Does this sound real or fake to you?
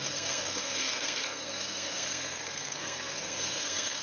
fake